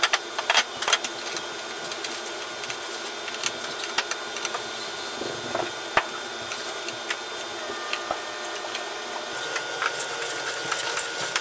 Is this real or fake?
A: real